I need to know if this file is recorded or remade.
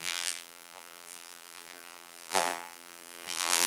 remade